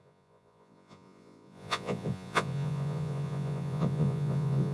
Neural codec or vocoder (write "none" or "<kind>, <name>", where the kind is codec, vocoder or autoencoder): vocoder, Vocos